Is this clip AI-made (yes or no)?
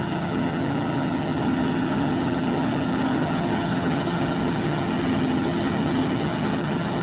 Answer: yes